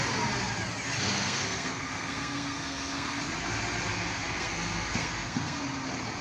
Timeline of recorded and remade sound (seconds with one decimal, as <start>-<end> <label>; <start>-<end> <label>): 0.0-1.1 recorded; 1.1-3.2 remade; 3.2-3.9 recorded; 3.9-5.6 remade; 5.6-6.2 recorded